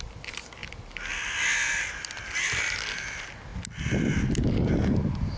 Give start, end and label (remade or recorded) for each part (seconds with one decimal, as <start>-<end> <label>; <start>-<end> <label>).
0.0-5.4 recorded